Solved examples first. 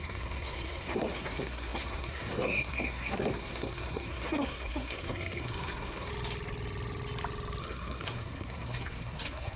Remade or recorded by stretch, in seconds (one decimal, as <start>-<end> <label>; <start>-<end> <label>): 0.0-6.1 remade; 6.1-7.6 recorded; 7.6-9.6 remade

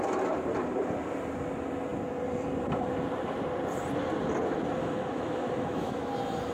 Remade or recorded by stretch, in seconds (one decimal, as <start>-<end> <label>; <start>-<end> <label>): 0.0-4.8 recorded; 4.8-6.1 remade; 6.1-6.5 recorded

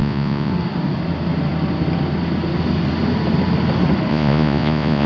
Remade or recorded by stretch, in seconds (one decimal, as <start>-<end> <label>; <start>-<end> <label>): 0.0-0.5 remade; 0.5-4.1 recorded; 4.1-5.1 remade

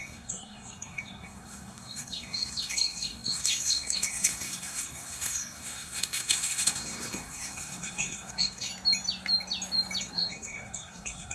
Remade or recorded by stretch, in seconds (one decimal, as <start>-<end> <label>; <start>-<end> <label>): 0.0-8.7 remade; 8.7-10.0 recorded; 10.0-11.3 remade

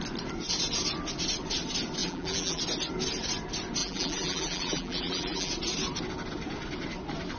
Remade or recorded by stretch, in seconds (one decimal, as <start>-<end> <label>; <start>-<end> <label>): 0.0-2.0 recorded; 2.0-2.6 remade; 2.6-3.8 recorded; 3.8-5.5 remade; 5.5-7.4 recorded

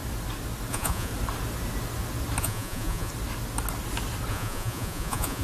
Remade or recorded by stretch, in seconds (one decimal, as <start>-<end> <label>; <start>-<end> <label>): 0.0-0.7 recorded; 0.7-1.1 remade; 1.1-2.4 recorded; 2.4-3.1 remade; 3.1-4.3 recorded; 4.3-5.4 remade

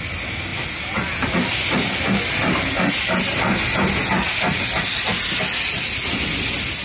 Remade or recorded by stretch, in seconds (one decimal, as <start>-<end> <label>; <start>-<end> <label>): 0.0-6.8 recorded